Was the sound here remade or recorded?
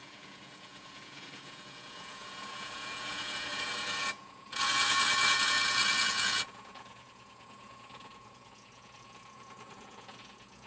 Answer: remade